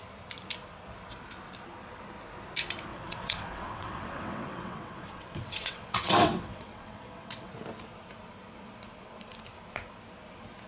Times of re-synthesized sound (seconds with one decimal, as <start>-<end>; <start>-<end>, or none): 2.9-7.5